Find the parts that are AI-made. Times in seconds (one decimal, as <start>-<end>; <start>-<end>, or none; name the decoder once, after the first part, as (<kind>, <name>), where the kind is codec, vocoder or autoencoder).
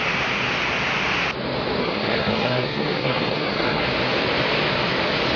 1.8-3.8 (codec, SNAC)